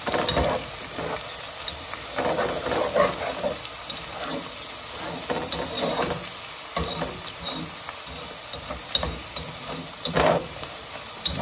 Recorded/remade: recorded